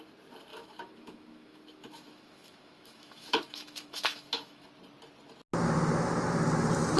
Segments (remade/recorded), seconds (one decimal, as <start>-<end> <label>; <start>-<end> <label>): 0.0-0.5 recorded; 0.5-4.7 remade; 4.7-7.0 recorded